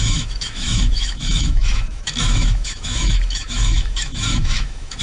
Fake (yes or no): yes